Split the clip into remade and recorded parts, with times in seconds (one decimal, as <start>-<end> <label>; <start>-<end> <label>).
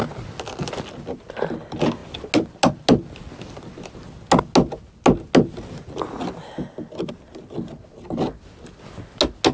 0.0-9.5 recorded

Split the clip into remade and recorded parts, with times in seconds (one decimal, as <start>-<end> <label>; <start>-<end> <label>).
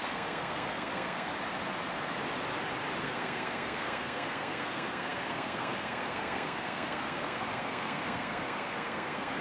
0.0-1.3 remade; 1.3-3.0 recorded; 3.0-9.4 remade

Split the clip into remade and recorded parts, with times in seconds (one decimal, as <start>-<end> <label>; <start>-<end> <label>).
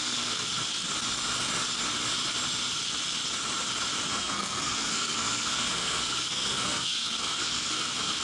0.0-0.5 remade; 0.5-4.1 recorded; 4.1-8.2 remade